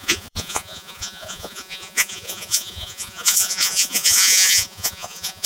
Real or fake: fake